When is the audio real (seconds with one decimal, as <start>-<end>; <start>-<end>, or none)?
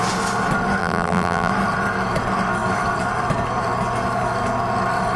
0.0-0.8; 1.5-5.2